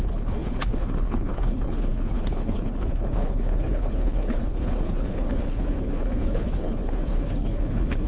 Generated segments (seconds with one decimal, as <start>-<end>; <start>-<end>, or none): 0.0-8.1